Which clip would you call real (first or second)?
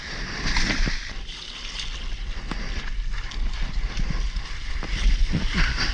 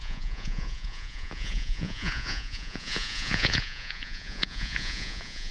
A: first